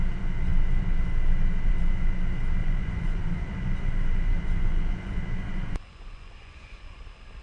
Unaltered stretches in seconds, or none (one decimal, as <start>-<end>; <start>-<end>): 0.0-2.6; 7.0-7.4